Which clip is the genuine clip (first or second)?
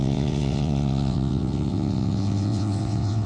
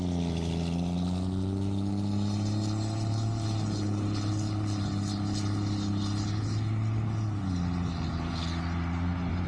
second